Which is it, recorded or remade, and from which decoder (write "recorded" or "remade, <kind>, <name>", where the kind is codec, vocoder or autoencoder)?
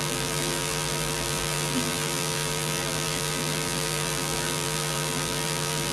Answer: remade, vocoder, BigVGAN v2